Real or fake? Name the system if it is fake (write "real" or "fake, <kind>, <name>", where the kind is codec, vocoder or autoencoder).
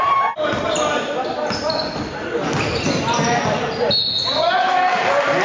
real